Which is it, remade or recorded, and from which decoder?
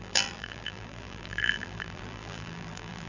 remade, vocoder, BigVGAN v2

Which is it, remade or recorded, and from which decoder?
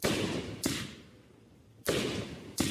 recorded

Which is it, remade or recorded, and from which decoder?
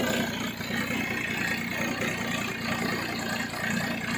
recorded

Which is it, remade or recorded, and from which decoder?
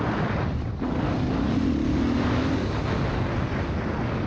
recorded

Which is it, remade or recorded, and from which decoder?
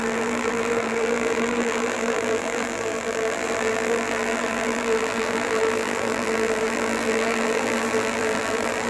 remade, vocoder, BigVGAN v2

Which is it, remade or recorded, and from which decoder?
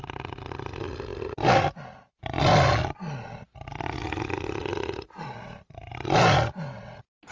recorded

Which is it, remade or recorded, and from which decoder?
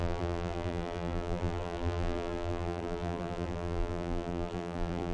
remade, vocoder, BigVGAN v2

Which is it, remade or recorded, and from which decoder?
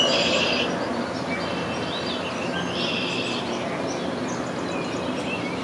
recorded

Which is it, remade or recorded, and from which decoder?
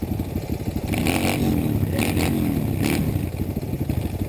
recorded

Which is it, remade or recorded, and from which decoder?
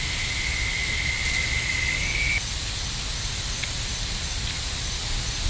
recorded